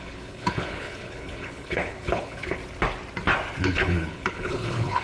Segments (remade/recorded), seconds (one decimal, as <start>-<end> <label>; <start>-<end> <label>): 0.0-2.6 remade; 2.6-3.6 recorded; 3.6-5.0 remade